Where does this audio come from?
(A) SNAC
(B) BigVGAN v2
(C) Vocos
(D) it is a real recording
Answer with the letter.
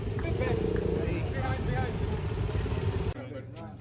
D